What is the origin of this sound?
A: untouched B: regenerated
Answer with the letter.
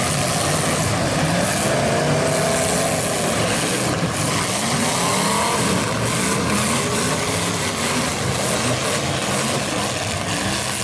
A